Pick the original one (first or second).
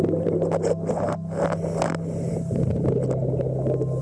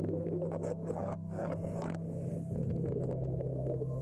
first